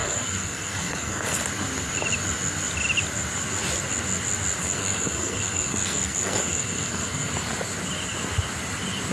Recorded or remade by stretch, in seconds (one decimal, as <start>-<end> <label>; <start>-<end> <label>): 0.0-1.4 remade; 1.4-4.6 recorded; 4.6-7.3 remade; 7.3-9.1 recorded